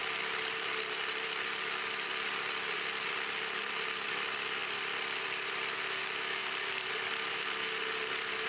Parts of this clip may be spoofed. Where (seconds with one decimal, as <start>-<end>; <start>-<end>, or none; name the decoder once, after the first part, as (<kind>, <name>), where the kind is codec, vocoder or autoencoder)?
0.0-3.4 (vocoder, BigVGAN v2); 4.6-5.5; 6.4-6.9